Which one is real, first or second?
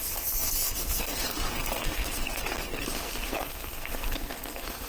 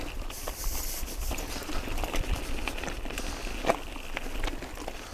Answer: second